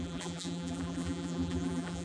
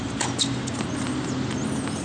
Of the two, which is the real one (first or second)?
second